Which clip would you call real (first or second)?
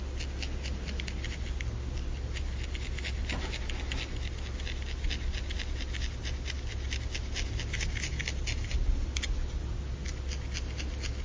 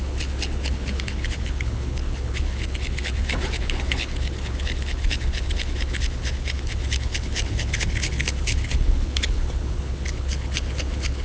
first